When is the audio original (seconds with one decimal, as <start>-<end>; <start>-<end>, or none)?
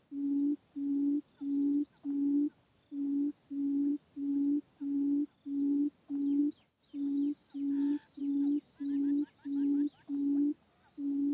0.0-11.3